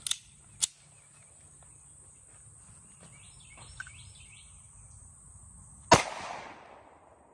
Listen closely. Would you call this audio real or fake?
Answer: real